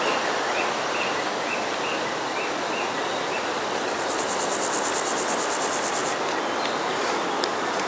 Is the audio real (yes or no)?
yes